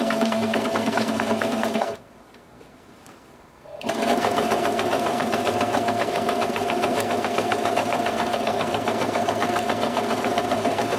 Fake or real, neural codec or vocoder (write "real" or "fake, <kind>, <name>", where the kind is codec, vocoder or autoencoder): fake, codec, SNAC